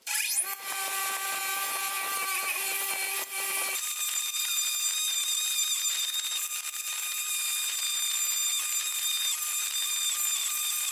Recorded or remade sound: remade